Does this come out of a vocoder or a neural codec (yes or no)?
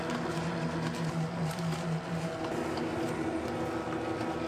no